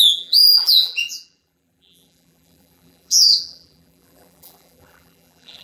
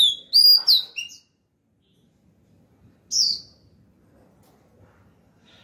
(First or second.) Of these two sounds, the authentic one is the second